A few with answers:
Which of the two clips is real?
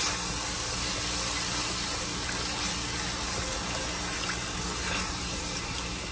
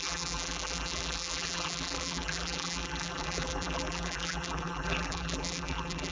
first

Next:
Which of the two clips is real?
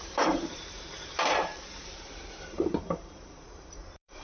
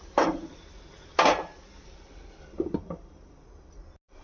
second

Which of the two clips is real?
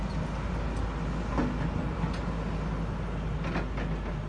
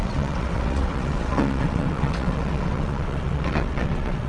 first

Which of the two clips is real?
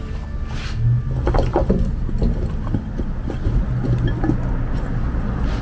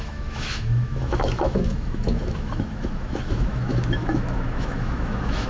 first